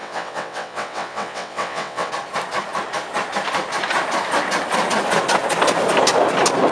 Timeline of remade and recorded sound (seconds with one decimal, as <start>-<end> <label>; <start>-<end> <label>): 0.0-2.1 remade; 2.1-6.7 recorded